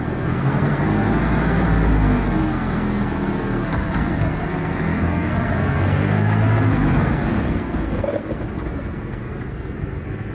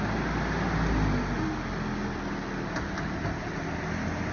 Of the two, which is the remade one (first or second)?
first